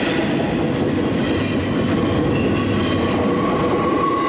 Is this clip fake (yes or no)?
no